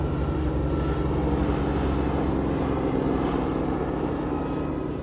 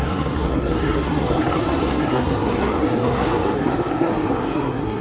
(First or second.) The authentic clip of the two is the first